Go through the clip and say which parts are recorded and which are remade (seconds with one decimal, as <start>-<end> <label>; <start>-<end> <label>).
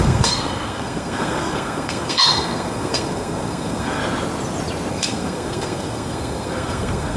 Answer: 0.0-4.0 remade; 4.0-4.9 recorded; 4.9-7.2 remade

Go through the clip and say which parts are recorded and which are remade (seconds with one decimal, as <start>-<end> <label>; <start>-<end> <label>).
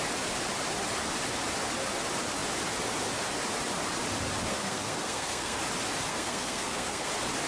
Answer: 0.0-4.5 recorded; 4.5-5.6 remade; 5.6-6.1 recorded; 6.1-7.1 remade; 7.1-7.5 recorded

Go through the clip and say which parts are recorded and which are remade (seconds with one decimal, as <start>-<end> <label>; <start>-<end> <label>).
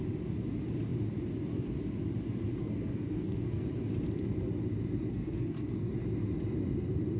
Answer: 0.0-2.6 recorded; 2.6-3.7 remade; 3.7-5.1 recorded; 5.1-5.9 remade; 5.9-7.2 recorded